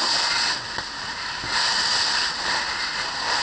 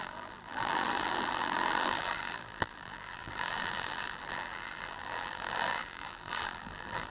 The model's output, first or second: second